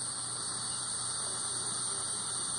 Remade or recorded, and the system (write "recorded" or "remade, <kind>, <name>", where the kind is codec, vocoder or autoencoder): recorded